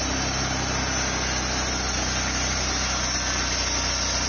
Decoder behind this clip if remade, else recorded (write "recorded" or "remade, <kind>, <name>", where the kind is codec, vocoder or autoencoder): recorded